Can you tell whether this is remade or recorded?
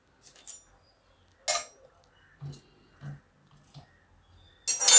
recorded